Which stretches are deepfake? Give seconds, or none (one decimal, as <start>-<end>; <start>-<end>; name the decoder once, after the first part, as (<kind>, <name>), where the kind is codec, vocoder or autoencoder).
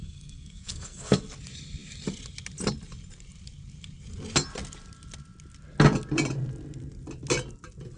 0.0-1.2 (codec, SNAC)